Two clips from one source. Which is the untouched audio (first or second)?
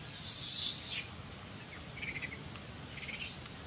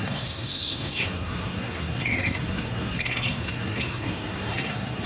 first